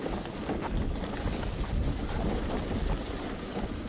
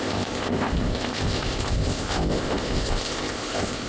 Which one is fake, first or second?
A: second